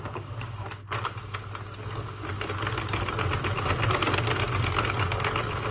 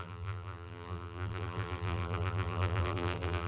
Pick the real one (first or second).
first